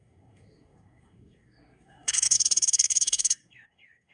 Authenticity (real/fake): fake